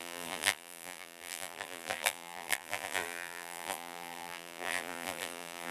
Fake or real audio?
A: fake